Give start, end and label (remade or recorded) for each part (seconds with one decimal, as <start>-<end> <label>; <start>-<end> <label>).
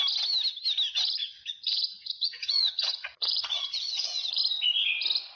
0.0-1.2 recorded; 1.2-4.4 remade; 4.4-5.4 recorded